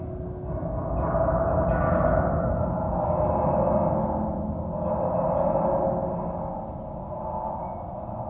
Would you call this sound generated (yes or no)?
no